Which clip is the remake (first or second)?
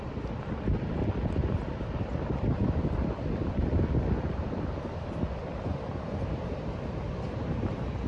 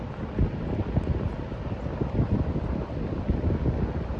first